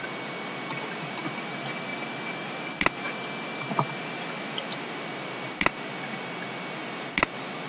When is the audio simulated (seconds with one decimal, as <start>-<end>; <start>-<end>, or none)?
none